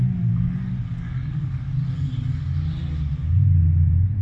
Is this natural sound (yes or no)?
yes